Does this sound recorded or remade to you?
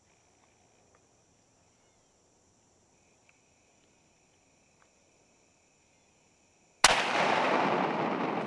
recorded